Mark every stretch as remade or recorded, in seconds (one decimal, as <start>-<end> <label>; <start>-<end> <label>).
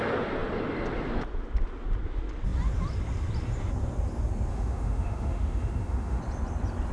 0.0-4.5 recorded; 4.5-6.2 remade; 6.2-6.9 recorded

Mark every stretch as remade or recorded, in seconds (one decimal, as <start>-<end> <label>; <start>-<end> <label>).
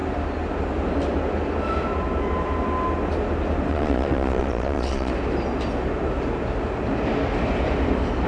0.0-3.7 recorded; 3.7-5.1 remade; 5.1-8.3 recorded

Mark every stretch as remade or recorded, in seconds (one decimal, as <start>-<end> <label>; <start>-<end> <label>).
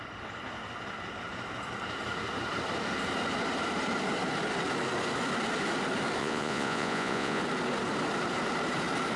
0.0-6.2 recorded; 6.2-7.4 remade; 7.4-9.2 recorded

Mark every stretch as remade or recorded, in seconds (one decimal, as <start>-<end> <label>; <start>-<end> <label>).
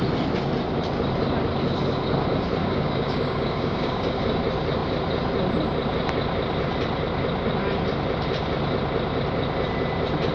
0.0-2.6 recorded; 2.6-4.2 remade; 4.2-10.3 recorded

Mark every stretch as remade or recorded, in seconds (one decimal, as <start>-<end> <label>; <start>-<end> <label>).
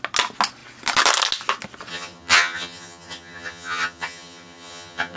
0.0-1.9 recorded; 1.9-5.2 remade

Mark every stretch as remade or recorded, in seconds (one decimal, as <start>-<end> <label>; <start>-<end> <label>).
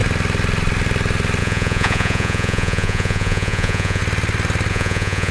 0.0-1.4 recorded; 1.4-4.0 remade; 4.0-4.7 recorded; 4.7-5.3 remade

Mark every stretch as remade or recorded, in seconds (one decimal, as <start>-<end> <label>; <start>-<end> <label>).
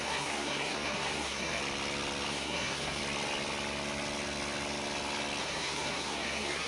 0.0-1.6 remade; 1.6-2.3 recorded; 2.3-3.0 remade; 3.0-5.4 recorded; 5.4-6.7 remade